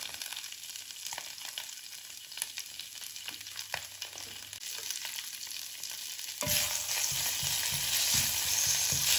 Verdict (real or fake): real